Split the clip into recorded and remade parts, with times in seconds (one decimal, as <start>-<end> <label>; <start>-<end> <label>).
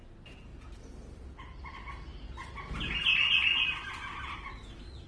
0.0-5.1 recorded